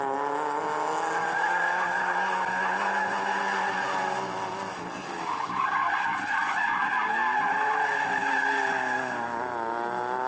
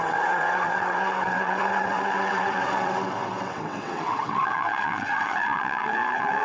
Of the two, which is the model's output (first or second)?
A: second